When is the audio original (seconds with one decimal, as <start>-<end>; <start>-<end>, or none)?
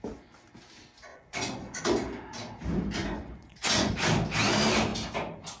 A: 0.0-1.1; 1.8-3.0; 3.9-5.6